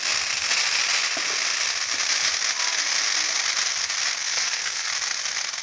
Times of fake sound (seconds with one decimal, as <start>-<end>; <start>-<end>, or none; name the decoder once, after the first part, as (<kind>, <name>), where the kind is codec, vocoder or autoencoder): 4.2-4.9 (codec, SNAC)